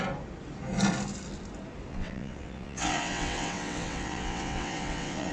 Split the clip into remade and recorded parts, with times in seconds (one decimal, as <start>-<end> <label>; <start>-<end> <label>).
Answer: 0.0-1.9 recorded; 1.9-5.3 remade